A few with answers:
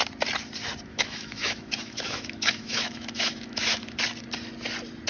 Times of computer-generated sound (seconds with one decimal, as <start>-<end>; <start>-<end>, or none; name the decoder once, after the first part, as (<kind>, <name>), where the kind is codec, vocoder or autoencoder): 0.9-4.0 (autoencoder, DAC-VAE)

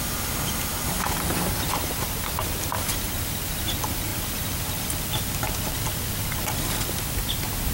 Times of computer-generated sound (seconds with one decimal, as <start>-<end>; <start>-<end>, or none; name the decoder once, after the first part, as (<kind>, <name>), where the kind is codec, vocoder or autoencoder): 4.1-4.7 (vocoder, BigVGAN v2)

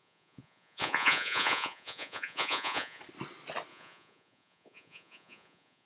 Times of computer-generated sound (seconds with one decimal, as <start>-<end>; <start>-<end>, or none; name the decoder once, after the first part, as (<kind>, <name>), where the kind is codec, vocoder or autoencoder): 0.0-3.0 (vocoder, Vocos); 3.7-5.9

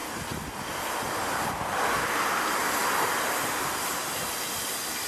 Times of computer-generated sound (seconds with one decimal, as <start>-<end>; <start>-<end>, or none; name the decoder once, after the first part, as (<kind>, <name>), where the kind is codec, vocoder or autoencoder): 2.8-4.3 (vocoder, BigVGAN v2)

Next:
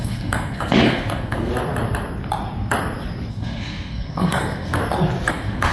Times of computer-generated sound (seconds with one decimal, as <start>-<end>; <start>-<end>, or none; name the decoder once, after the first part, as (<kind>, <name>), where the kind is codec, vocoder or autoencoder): 0.0-1.5 (codec, SNAC); 3.3-4.8; 5.3-5.7